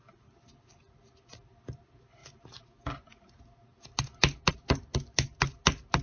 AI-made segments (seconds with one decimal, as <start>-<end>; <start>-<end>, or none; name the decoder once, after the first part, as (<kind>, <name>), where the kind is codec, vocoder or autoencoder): none